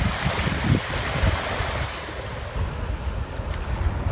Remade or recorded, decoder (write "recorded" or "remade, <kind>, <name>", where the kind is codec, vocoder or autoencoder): recorded